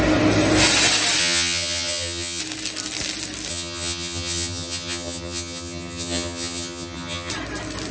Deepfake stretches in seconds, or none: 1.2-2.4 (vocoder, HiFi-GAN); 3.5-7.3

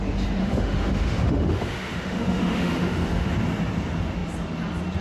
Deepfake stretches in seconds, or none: 0.4-3.3 (autoencoder, DAC-VAE)

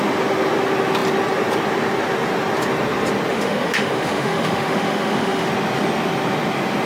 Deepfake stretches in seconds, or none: 3.3-5.5 (autoencoder, DAC-VAE)

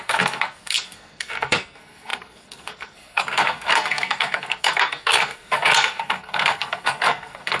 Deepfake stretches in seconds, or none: 0.0-7.6 (codec, SNAC)